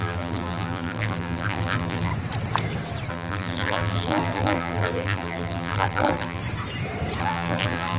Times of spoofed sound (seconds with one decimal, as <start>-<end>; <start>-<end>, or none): 0.0-2.1; 3.1-6.4; 7.2-8.0